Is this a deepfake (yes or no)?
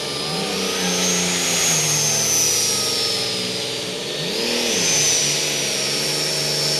no